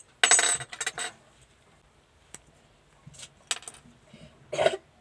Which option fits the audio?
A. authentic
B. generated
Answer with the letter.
A